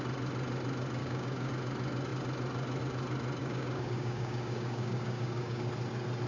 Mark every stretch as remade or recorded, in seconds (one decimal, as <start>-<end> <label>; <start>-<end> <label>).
0.0-1.0 recorded; 1.0-1.5 remade; 1.5-3.4 recorded; 3.4-5.7 remade; 5.7-6.3 recorded